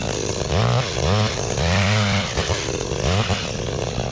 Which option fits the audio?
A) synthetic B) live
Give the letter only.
B